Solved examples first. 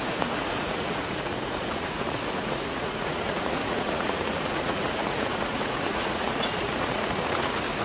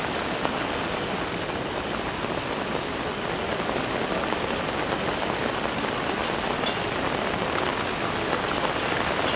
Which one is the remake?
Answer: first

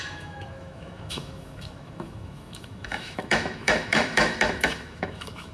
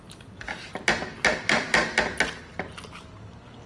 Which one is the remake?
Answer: first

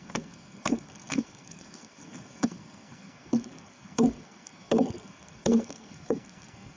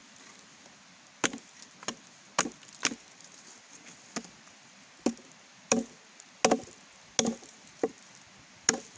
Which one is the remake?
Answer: first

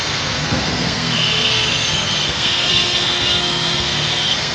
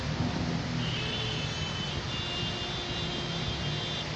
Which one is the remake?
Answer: first